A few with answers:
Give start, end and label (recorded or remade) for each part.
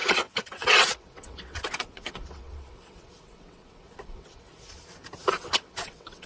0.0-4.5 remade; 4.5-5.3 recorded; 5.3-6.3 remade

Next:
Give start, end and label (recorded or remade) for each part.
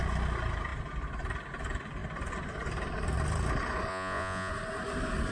0.0-3.9 recorded; 3.9-4.5 remade; 4.5-5.3 recorded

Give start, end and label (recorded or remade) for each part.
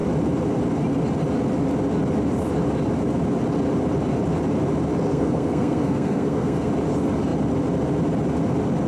0.0-5.1 recorded; 5.1-6.7 remade; 6.7-8.9 recorded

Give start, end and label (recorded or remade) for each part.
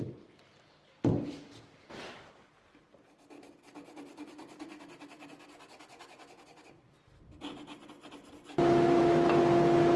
0.0-10.0 recorded